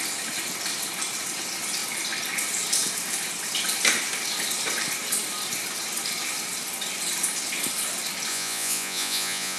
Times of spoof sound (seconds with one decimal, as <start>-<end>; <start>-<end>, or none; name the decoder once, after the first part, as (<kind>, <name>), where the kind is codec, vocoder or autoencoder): 8.3-9.6 (vocoder, Vocos)